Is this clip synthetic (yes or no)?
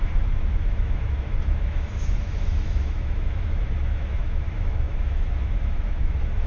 yes